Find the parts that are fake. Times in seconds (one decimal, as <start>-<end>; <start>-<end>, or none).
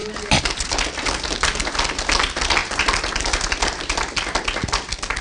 2.6-3.8